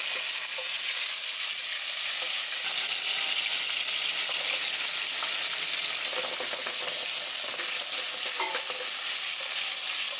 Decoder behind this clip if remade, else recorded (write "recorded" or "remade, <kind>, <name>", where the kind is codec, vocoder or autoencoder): recorded